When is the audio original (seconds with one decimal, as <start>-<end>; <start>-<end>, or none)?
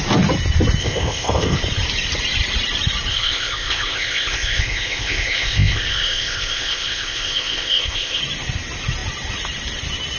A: 0.0-0.8; 1.6-3.1; 8.2-10.2